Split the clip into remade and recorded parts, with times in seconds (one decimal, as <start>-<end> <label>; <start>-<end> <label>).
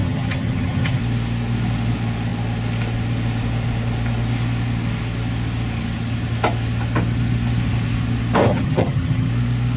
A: 0.0-1.0 remade; 1.0-8.5 recorded; 8.5-9.3 remade; 9.3-9.8 recorded